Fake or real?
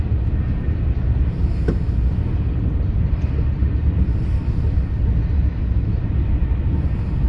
real